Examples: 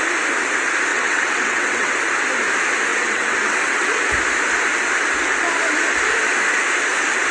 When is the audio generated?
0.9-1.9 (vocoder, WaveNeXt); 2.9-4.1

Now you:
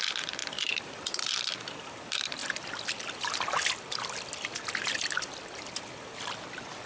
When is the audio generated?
0.0-2.4 (vocoder, BigVGAN v2); 6.5-6.9